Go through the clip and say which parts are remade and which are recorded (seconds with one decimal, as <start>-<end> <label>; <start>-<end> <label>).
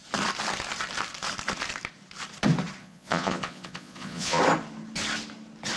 0.0-2.8 recorded; 2.8-4.4 remade; 4.4-5.8 recorded